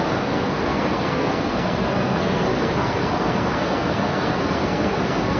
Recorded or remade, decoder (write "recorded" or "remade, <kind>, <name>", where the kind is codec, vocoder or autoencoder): remade, codec, SNAC